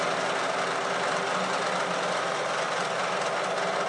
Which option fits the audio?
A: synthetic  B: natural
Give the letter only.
B